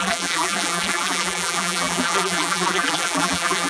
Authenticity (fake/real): fake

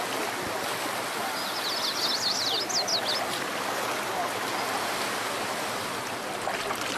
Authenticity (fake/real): real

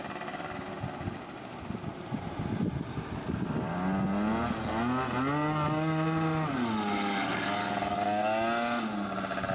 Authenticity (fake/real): real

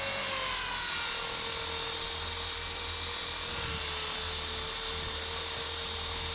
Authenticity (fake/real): real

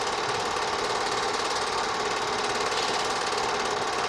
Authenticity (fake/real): real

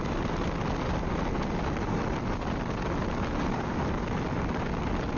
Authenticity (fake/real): real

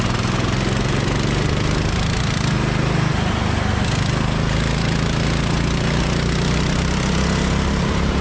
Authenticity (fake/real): real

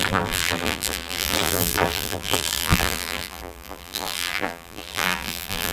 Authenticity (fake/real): fake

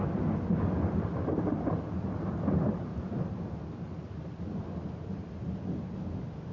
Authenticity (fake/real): real